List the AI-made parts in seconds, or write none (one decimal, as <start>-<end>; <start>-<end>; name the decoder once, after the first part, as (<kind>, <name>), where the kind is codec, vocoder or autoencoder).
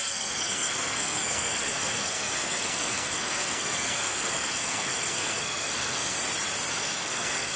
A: 0.0-6.2 (codec, SNAC); 6.7-7.6